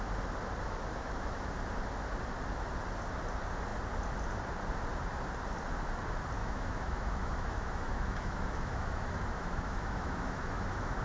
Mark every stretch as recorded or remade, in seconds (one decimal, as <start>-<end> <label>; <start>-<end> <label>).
0.0-0.9 recorded; 0.9-1.5 remade; 1.5-6.4 recorded; 6.4-11.0 remade